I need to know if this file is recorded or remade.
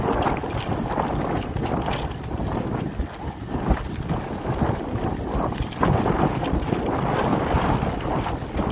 recorded